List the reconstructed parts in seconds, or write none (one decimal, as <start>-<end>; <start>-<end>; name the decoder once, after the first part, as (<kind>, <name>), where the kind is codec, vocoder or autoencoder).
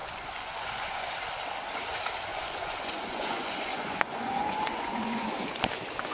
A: 0.0-1.1 (vocoder, Vocos); 2.3-5.3